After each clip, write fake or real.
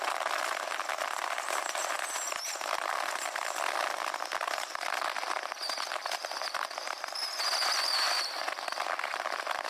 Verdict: real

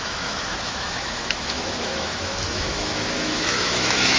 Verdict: fake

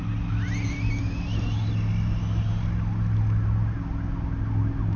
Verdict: real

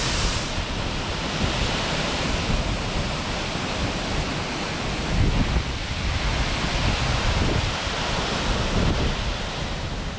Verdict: real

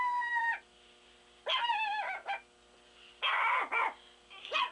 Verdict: real